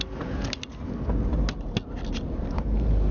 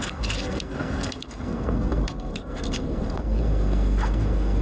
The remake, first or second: second